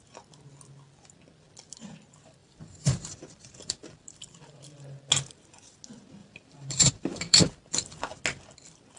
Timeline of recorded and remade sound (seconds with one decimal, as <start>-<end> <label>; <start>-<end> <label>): 0.0-2.4 recorded; 2.4-4.6 remade; 4.6-6.2 recorded; 6.2-7.4 remade; 7.4-9.0 recorded